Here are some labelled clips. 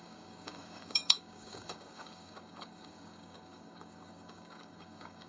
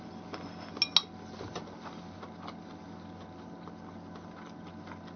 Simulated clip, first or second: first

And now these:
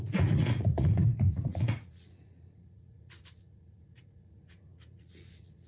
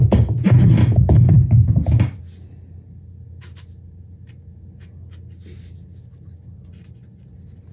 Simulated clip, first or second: first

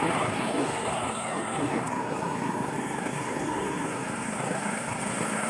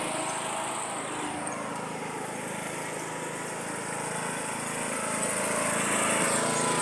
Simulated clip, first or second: first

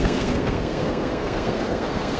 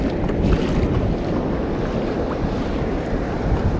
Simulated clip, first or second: first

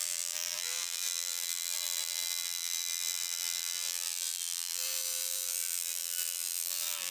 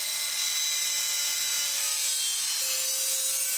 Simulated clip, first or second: first